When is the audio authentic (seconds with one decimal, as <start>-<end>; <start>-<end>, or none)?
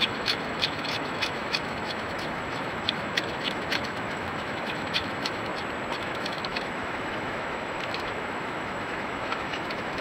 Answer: 5.5-6.0